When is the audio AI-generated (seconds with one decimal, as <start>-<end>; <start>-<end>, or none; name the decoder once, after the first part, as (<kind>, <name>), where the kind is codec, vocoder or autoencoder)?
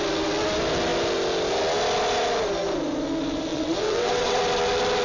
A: 3.5-4.4 (vocoder, WaveNeXt)